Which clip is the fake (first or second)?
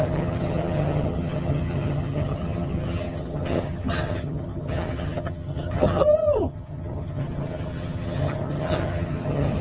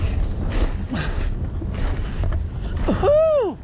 first